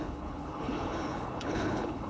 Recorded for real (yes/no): no